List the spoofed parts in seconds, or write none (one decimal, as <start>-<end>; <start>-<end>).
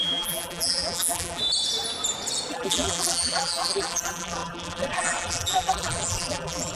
0.0-1.4; 2.5-6.8